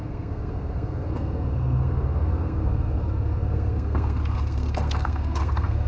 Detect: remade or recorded remade